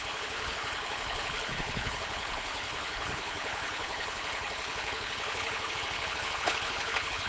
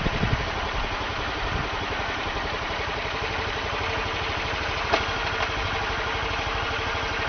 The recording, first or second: second